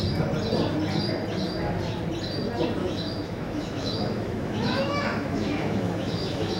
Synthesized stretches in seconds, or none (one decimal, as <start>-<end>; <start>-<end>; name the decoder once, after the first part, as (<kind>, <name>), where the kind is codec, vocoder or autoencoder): 2.8-6.6 (autoencoder, DAC-VAE)